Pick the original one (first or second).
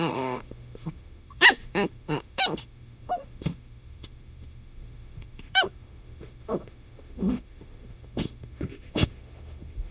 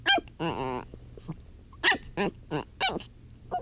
second